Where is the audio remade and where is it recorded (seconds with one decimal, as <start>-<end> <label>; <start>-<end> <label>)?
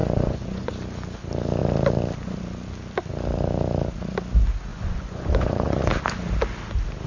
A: 0.0-0.7 remade; 0.7-4.7 recorded; 4.7-5.9 remade; 5.9-7.1 recorded